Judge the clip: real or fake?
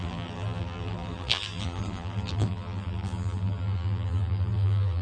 fake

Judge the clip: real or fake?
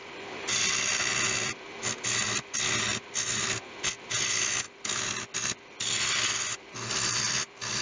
real